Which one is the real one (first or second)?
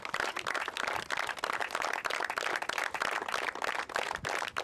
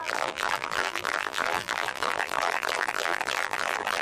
first